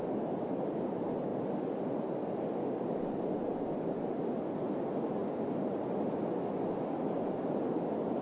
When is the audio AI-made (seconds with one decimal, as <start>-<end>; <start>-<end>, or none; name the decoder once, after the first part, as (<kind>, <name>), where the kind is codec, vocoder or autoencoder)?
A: none